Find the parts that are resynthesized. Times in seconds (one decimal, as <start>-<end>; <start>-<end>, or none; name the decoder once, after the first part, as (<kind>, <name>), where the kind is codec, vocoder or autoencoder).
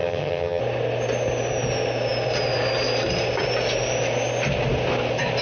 0.0-0.6 (vocoder, HiFi-GAN)